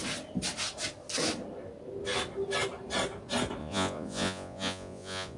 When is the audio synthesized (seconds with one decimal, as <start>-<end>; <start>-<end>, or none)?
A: 3.6-5.4